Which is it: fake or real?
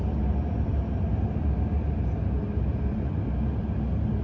real